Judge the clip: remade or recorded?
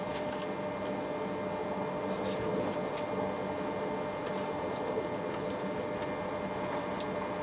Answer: recorded